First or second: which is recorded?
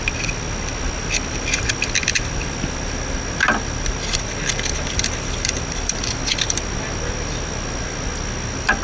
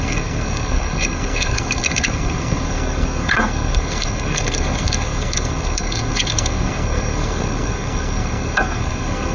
first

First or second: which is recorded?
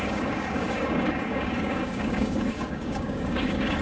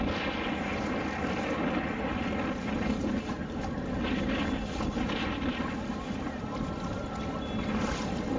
second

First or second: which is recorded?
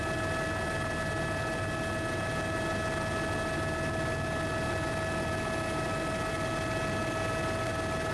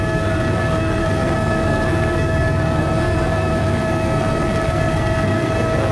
first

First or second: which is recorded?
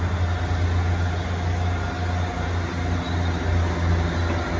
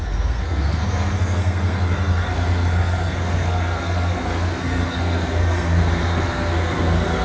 first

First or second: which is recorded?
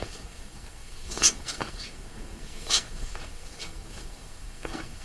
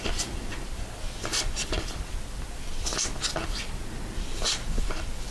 second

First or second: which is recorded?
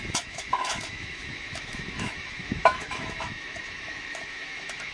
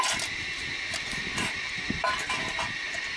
second